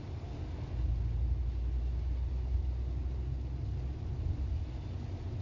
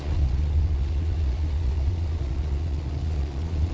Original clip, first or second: first